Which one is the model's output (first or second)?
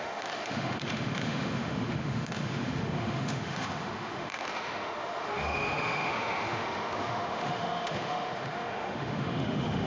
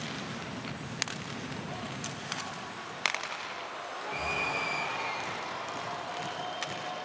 first